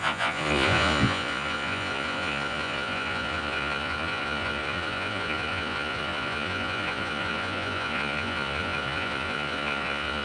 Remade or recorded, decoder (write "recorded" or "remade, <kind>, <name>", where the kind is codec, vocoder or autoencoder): remade, vocoder, Vocos